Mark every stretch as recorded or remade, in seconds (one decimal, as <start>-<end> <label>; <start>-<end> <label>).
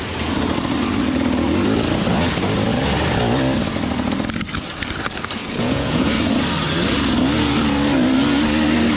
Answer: 0.0-5.4 recorded; 5.4-6.1 remade; 6.1-9.0 recorded